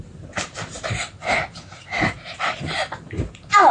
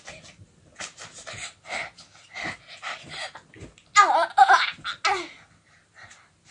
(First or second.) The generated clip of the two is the first